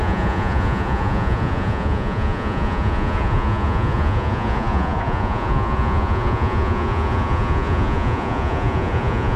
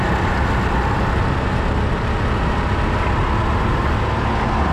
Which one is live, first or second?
second